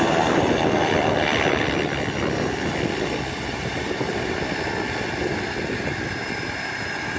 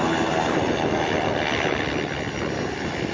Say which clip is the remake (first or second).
first